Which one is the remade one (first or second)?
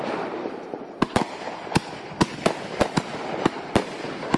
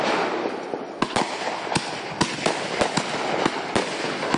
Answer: first